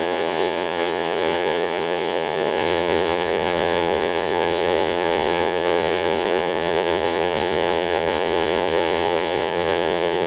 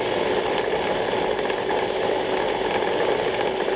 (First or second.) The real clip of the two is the second